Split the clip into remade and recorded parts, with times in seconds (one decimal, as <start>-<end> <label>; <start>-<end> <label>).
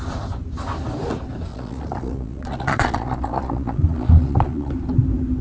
0.0-1.5 recorded; 1.5-4.7 remade; 4.7-5.4 recorded